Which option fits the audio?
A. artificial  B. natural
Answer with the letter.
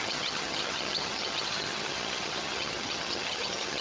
A